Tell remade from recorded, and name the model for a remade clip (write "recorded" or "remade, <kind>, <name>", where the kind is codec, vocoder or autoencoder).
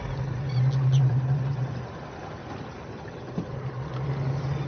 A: recorded